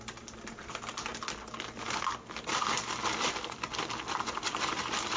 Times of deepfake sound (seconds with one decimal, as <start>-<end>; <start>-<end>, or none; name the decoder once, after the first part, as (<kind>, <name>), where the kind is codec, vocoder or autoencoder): 0.0-1.1 (vocoder, BigVGAN v2); 4.2-5.2